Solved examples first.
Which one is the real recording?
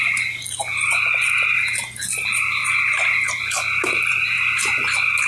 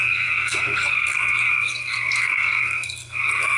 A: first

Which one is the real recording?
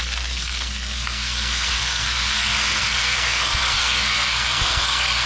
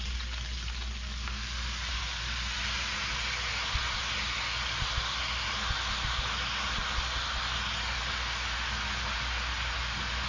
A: second